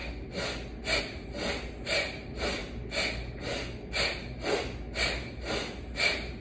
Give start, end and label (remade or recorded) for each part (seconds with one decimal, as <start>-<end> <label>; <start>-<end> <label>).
0.0-1.0 recorded; 1.0-2.6 remade; 2.6-6.4 recorded